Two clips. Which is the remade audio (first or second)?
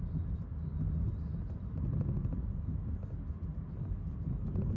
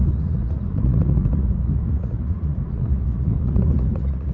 second